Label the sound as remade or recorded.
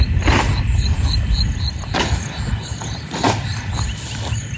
recorded